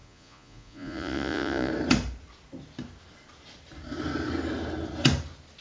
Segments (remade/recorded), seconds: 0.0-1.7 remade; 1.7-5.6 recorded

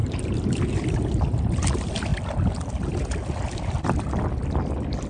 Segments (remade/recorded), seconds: 0.0-5.1 recorded